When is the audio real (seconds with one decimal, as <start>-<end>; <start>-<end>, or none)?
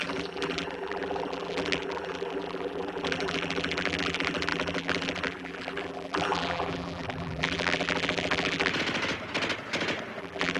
8.7-10.2